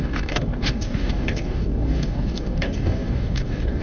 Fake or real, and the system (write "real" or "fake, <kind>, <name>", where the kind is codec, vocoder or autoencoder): fake, codec, DAC